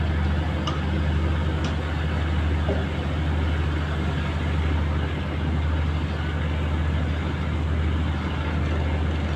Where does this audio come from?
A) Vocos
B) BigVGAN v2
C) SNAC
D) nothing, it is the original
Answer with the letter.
D